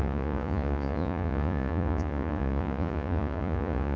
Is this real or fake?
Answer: fake